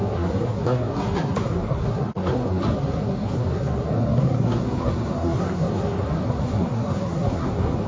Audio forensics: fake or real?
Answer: fake